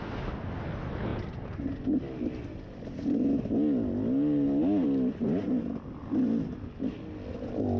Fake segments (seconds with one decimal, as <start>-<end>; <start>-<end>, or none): none